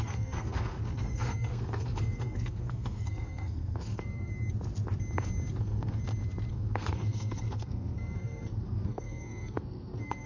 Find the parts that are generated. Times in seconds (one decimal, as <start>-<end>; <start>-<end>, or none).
0.0-4.3; 5.6-6.0; 6.5-10.3